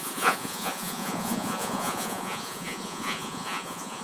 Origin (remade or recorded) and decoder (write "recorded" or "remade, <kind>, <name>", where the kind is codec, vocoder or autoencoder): remade, vocoder, Vocos